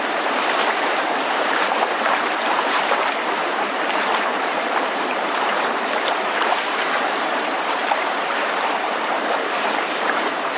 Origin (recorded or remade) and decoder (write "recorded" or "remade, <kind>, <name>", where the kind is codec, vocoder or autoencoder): remade, vocoder, BigVGAN v2